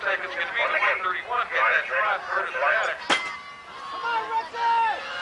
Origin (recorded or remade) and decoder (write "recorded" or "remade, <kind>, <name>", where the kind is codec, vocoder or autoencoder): recorded